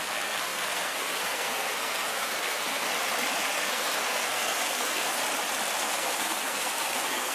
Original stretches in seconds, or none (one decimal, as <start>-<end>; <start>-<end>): 2.9-3.4; 5.2-5.8